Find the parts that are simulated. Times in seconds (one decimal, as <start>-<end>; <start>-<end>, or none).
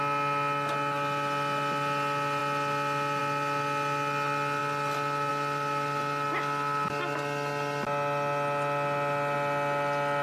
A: none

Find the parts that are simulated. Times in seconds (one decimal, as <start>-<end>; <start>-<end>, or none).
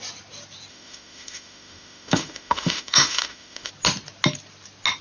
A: 0.7-3.7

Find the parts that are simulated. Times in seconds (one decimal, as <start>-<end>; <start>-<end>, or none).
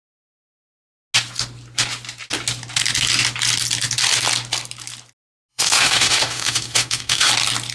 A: 5.5-7.3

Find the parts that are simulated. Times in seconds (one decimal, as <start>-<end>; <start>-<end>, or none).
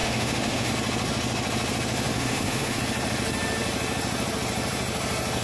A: 0.0-0.7; 2.1-2.8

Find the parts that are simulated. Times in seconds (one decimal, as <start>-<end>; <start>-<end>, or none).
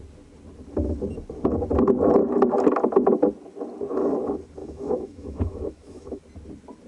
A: 4.6-6.2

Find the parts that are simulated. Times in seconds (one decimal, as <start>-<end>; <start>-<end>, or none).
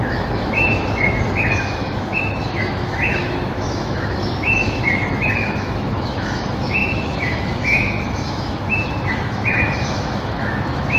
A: 0.0-11.0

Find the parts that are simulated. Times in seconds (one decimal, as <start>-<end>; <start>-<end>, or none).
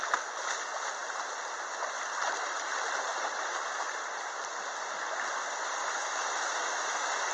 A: 5.8-7.3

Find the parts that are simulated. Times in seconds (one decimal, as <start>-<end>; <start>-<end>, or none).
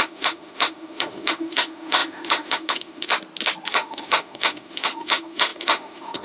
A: 0.0-3.1; 3.7-6.2